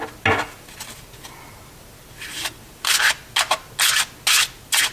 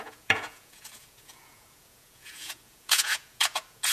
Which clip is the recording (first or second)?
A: first